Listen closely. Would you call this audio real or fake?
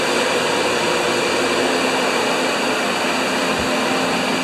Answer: real